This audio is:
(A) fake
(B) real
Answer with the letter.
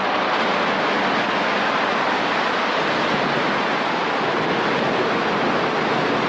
B